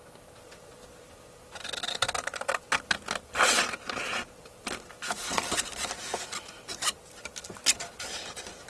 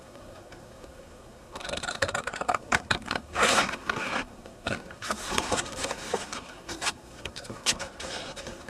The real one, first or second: first